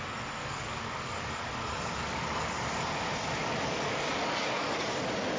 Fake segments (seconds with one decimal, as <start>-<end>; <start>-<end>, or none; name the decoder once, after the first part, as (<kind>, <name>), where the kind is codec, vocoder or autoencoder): 0.4-2.8 (codec, DAC); 3.4-5.0